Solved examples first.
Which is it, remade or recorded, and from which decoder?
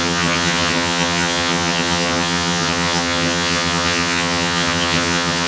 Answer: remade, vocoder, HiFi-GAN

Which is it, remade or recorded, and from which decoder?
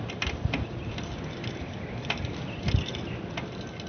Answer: recorded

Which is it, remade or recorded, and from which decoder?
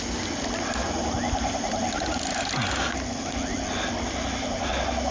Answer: recorded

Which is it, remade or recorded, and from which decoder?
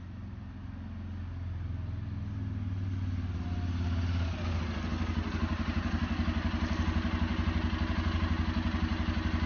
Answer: recorded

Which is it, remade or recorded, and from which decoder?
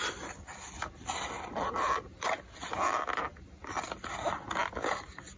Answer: recorded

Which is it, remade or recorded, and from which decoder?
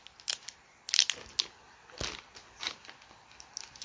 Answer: recorded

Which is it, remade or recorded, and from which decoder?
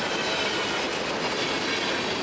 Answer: recorded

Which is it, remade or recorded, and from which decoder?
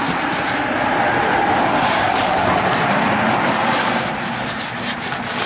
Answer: recorded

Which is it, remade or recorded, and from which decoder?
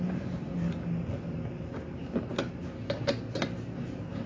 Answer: recorded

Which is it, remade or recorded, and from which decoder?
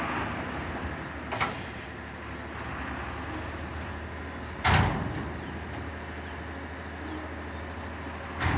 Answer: recorded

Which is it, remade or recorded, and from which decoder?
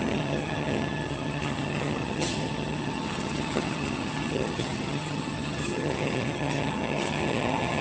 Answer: remade, vocoder, HiFi-GAN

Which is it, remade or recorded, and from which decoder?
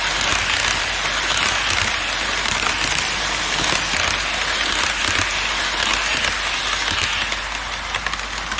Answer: recorded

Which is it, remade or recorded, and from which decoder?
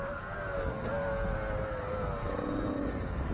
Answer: recorded